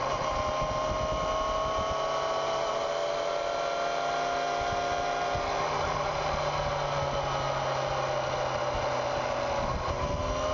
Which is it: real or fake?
real